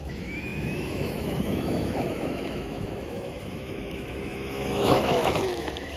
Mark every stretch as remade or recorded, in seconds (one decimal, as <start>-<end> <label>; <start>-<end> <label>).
0.0-6.0 remade